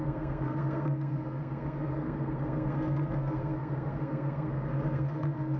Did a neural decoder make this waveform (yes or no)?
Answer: yes